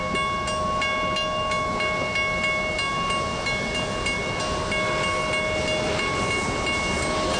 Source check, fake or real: real